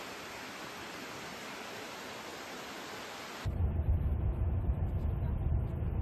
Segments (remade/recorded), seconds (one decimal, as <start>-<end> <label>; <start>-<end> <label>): 0.0-6.0 recorded